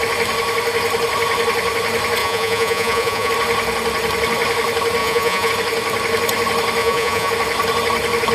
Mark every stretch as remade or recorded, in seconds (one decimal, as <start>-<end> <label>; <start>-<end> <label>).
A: 0.0-2.2 recorded; 2.2-3.3 remade; 3.3-5.0 recorded; 5.0-5.5 remade; 5.5-6.8 recorded; 6.8-7.3 remade; 7.3-8.3 recorded